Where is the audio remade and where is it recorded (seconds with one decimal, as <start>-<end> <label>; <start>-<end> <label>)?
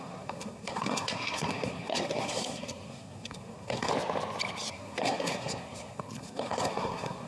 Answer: 0.0-3.9 remade; 3.9-4.7 recorded; 4.7-7.3 remade